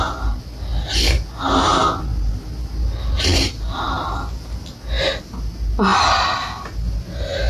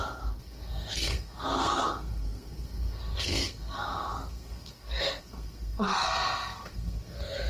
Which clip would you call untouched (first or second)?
first